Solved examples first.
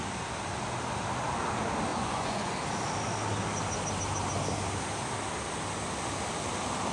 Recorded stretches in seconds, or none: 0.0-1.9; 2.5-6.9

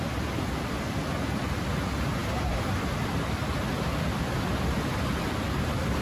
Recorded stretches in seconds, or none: 0.0-6.0

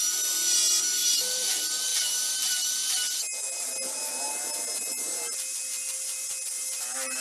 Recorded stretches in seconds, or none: 0.0-1.0; 1.5-7.2

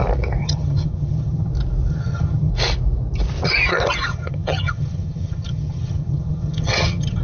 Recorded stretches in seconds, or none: 0.0-0.4; 1.5-1.9; 2.5-4.1

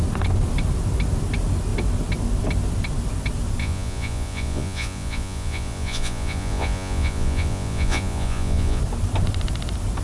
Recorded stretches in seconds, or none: 0.0-3.6; 8.8-10.0

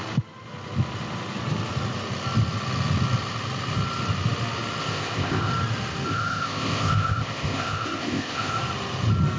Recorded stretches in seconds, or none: 0.0-4.8; 5.5-6.1; 8.6-9.4

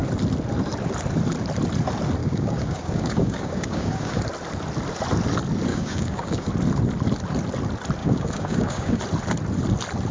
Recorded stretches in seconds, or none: 0.0-2.2; 4.2-5.7; 6.5-8.0; 9.0-10.1

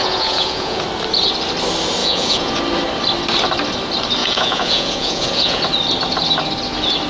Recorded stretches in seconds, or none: 0.8-2.0; 2.5-4.2; 5.6-7.1